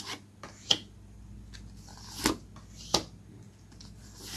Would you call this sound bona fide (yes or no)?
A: yes